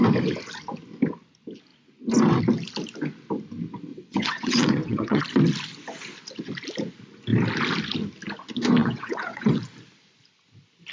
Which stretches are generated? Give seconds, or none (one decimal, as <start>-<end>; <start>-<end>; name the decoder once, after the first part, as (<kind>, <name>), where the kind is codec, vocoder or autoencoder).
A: 3.9-5.2 (vocoder, WaveNeXt); 8.8-9.6